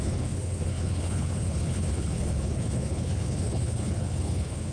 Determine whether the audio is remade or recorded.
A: remade